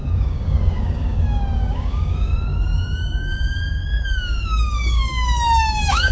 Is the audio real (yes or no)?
no